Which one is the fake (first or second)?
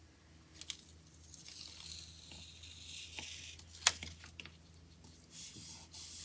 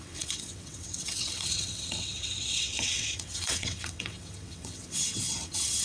second